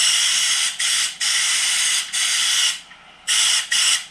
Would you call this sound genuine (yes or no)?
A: yes